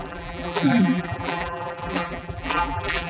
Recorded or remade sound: remade